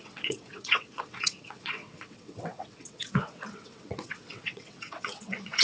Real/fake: fake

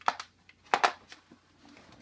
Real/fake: real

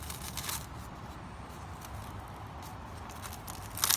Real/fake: real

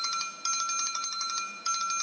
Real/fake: real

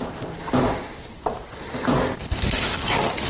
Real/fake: fake